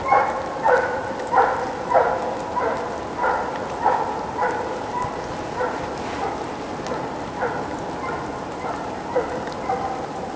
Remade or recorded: recorded